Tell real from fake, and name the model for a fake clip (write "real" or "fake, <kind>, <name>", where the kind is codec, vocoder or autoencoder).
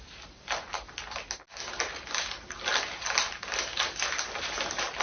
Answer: real